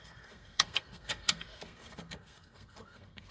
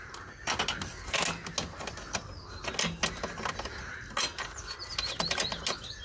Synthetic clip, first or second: first